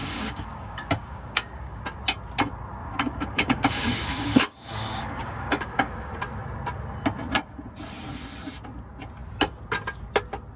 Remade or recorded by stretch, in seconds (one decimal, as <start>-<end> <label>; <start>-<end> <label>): 0.0-1.8 remade; 1.8-2.8 recorded; 2.8-6.1 remade; 6.1-10.6 recorded